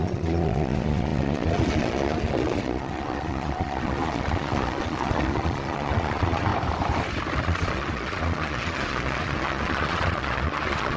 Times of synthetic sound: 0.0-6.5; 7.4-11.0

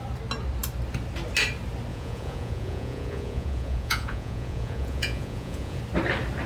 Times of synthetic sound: 1.9-5.8

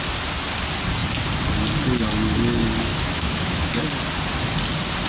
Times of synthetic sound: 2.9-3.8

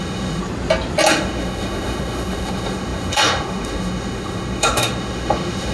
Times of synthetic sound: 0.0-0.4; 1.1-5.7